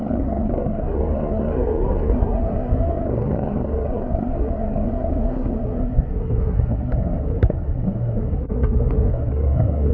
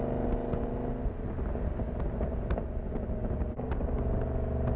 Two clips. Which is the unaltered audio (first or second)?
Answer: second